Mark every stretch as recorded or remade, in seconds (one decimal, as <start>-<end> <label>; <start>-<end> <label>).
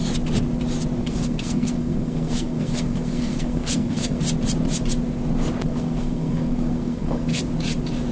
0.0-1.0 recorded; 1.0-4.2 remade; 4.2-5.7 recorded; 5.7-7.4 remade; 7.4-8.1 recorded